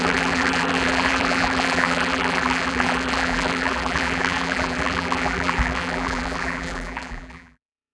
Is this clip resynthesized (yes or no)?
yes